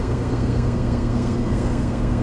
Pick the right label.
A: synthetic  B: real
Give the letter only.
A